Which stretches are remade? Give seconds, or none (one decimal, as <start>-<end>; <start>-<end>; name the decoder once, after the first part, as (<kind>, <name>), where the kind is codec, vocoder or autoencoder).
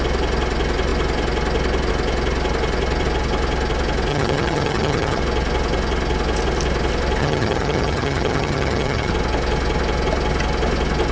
4.1-5.2 (vocoder, HiFi-GAN); 7.2-9.1